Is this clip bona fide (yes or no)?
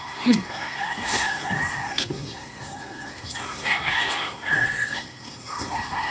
no